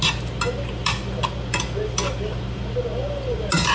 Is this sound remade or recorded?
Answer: recorded